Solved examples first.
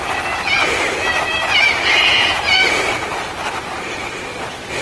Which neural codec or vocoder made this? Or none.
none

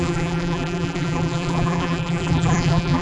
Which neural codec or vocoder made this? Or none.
vocoder, BigVGAN v2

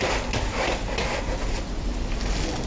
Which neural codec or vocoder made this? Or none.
none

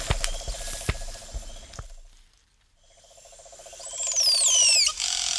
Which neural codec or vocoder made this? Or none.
none